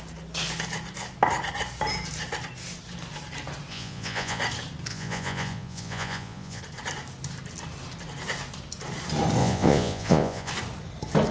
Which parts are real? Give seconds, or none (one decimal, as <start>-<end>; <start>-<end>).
0.0-3.7; 4.4-4.9; 6.6-9.4; 10.5-11.3